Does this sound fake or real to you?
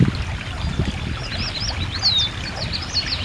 real